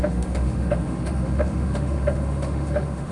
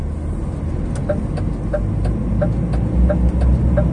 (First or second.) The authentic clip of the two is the second